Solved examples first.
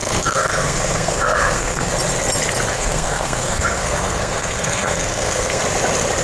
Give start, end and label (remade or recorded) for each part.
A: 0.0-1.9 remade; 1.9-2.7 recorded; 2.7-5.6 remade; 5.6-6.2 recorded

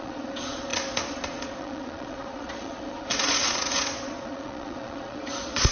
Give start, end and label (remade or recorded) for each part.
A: 0.0-5.7 remade

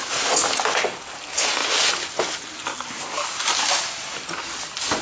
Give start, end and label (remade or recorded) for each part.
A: 0.0-5.0 recorded

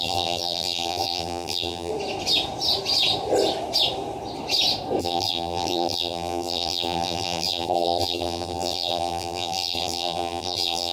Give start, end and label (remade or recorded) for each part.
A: 0.0-1.9 remade; 1.9-5.0 recorded; 5.0-10.9 remade

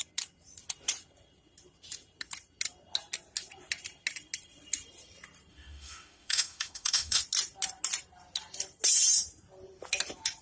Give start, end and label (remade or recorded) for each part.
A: 0.0-5.5 recorded; 5.5-7.2 remade; 7.2-10.4 recorded

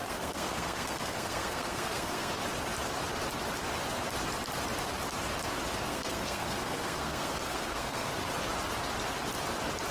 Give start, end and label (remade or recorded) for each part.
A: 0.0-2.3 remade; 2.3-5.9 recorded; 5.9-8.1 remade; 8.1-9.9 recorded

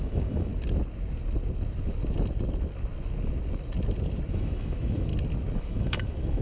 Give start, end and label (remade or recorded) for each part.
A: 0.0-0.5 remade; 0.5-4.3 recorded; 4.3-5.1 remade; 5.1-5.6 recorded; 5.6-6.4 remade